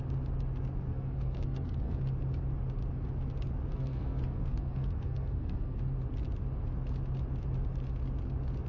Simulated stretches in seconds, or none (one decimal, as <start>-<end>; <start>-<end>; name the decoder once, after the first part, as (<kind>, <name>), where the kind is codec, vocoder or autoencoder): 0.9-2.0 (codec, SNAC); 3.7-5.8